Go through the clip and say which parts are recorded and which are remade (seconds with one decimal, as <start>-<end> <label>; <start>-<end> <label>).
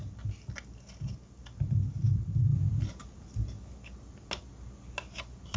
0.0-5.6 recorded